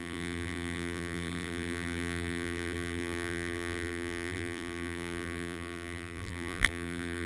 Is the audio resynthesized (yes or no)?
yes